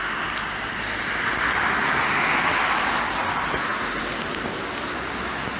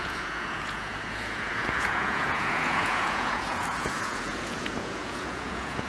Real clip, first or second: first